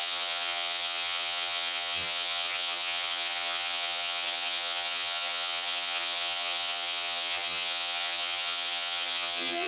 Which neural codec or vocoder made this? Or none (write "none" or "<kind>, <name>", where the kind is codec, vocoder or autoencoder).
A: vocoder, HiFi-GAN